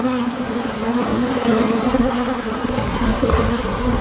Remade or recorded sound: remade